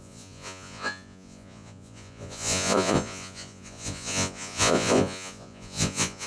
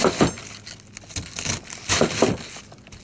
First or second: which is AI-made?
first